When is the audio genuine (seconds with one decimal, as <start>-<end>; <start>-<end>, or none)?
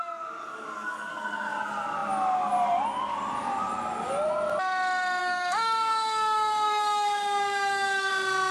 0.0-0.4; 1.6-5.2; 8.1-8.5